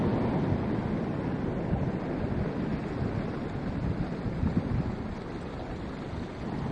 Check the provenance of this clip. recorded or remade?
recorded